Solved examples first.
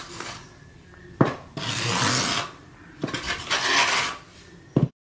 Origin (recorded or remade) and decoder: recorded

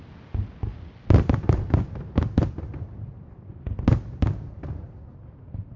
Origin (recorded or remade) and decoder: recorded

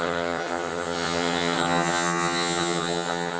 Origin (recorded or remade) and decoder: remade, vocoder, HiFi-GAN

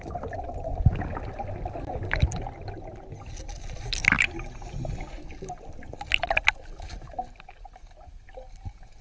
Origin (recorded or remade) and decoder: recorded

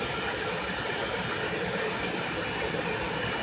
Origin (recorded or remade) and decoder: recorded